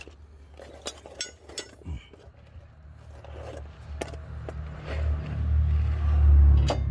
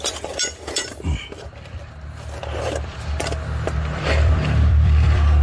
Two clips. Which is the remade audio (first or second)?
second